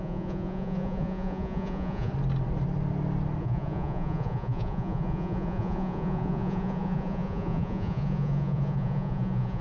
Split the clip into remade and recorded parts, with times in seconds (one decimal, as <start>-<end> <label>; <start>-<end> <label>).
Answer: 0.0-2.1 remade; 2.1-3.4 recorded; 3.4-9.6 remade